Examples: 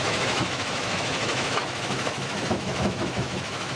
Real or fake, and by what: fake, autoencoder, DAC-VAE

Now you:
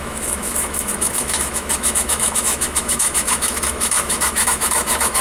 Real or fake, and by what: fake, autoencoder, DAC-VAE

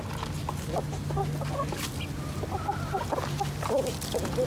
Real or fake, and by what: real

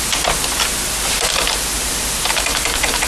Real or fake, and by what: real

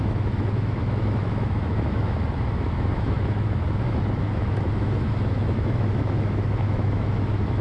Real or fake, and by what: fake, autoencoder, DAC-VAE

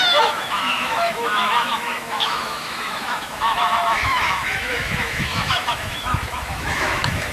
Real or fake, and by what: fake, autoencoder, DAC-VAE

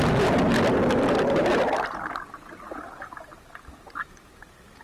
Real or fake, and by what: real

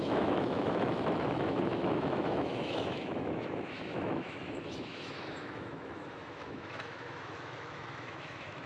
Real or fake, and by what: fake, autoencoder, DAC-VAE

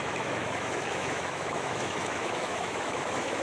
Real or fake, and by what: fake, autoencoder, DAC-VAE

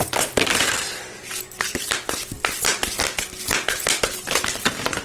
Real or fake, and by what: real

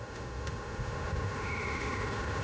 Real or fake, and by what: fake, autoencoder, DAC-VAE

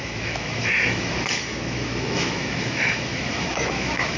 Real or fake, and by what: fake, autoencoder, DAC-VAE